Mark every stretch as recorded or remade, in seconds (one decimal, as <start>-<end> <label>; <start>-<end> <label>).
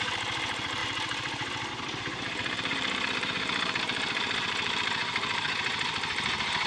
0.0-2.4 recorded; 2.4-5.5 remade; 5.5-6.7 recorded